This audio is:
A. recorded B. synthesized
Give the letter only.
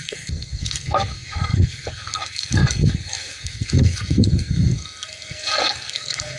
B